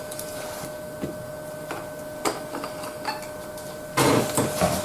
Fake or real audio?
real